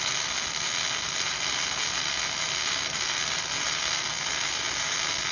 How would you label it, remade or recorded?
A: recorded